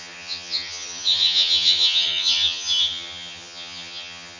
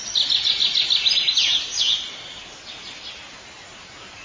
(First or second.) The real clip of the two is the second